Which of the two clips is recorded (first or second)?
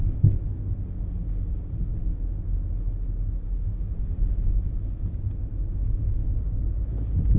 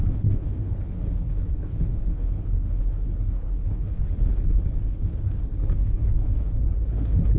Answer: first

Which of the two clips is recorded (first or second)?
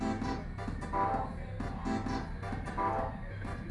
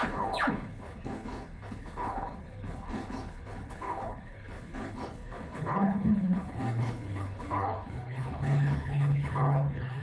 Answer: first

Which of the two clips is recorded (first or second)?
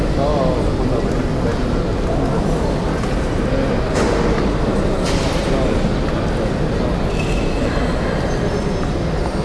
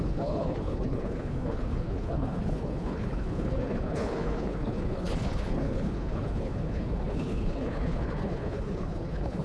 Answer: first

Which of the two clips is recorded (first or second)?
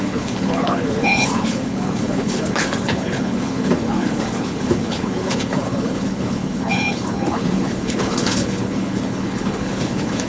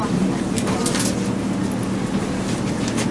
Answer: second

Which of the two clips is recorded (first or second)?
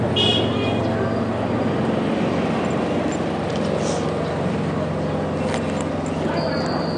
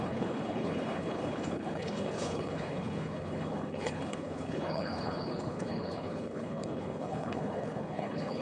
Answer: first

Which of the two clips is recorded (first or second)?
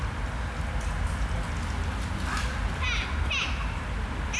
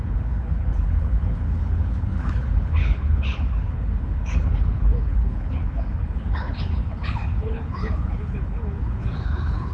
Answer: first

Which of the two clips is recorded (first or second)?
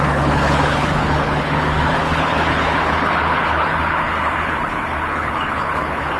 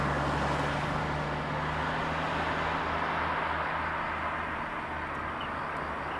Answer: second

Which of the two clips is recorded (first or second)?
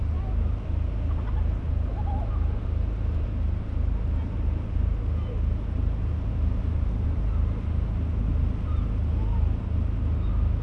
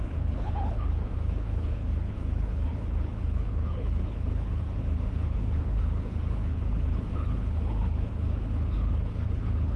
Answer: first